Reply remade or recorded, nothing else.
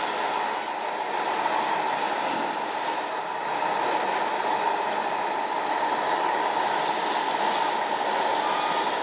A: recorded